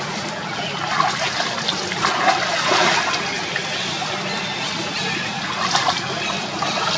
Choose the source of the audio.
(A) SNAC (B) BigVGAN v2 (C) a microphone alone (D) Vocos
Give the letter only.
C